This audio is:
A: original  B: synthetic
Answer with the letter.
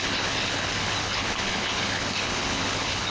B